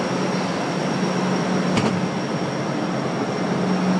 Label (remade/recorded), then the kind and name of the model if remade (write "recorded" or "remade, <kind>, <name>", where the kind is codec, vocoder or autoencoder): recorded